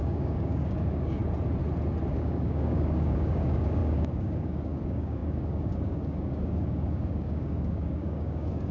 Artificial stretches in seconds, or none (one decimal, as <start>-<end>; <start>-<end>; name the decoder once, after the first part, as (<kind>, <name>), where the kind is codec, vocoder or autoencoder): 0.0-1.2 (codec, DAC); 2.1-8.7